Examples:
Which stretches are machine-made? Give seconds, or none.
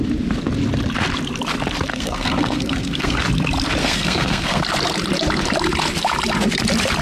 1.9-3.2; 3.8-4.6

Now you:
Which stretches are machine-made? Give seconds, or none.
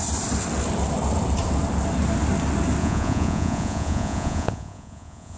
2.8-5.4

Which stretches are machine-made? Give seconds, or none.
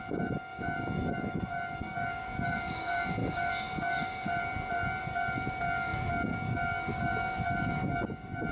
0.0-8.5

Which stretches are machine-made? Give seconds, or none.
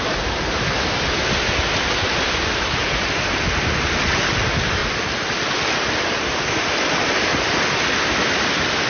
none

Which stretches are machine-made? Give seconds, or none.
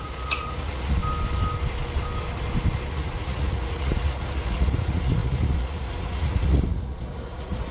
0.0-1.0; 2.9-7.7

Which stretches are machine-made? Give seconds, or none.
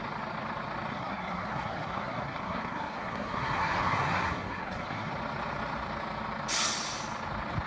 0.9-5.1